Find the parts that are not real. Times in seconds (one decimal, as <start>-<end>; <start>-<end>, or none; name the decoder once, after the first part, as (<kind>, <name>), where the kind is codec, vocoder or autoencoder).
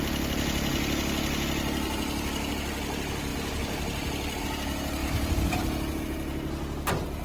none